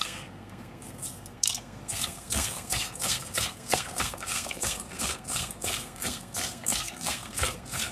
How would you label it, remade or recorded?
remade